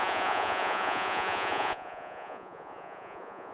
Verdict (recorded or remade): remade